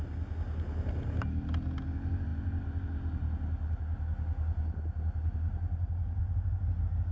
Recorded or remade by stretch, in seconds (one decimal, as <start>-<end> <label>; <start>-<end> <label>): 0.0-7.1 recorded